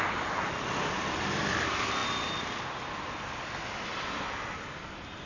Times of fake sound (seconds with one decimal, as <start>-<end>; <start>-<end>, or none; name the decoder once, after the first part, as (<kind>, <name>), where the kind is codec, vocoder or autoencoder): none